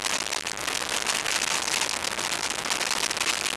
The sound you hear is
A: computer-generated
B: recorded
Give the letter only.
B